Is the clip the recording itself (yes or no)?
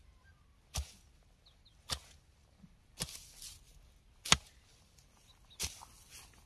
yes